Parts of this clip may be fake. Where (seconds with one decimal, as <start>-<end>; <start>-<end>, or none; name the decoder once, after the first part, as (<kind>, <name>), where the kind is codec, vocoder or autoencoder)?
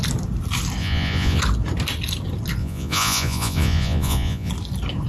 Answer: 0.8-1.4 (vocoder, Vocos); 2.6-4.5